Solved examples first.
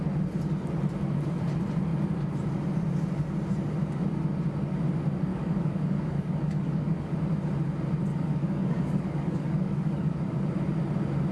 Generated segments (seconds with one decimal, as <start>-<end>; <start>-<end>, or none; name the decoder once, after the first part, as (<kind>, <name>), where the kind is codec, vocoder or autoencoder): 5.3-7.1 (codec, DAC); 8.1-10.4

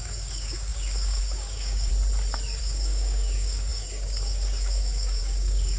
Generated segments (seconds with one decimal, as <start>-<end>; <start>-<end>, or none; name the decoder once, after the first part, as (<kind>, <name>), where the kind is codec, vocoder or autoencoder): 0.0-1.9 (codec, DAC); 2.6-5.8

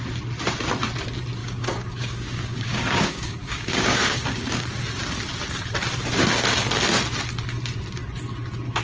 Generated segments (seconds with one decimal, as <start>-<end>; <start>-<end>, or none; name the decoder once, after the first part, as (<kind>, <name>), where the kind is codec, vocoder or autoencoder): 1.4-4.7 (codec, DAC)

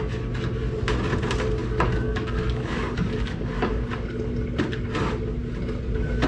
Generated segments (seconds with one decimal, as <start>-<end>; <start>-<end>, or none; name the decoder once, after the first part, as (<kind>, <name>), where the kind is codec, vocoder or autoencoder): 1.6-3.9 (codec, DAC)

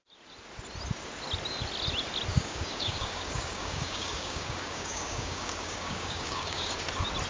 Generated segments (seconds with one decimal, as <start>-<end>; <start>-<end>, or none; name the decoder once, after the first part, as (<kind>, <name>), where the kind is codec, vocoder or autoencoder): 2.3-6.7 (codec, DAC)

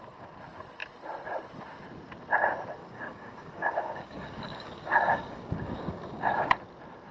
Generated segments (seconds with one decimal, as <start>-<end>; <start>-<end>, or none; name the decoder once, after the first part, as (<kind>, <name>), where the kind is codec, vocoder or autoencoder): 2.8-6.5 (codec, DAC)

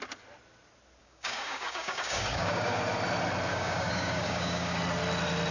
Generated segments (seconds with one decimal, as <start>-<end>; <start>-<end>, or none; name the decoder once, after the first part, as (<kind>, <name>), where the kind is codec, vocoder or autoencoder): 1.0-2.8 (codec, DAC); 3.5-4.8

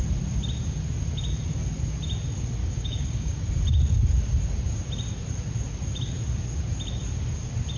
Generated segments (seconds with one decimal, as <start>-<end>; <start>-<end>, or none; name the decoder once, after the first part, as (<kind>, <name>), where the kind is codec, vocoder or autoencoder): 2.6-3.5 (codec, DAC)